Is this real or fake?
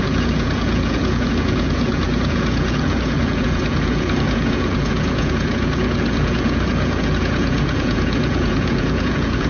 fake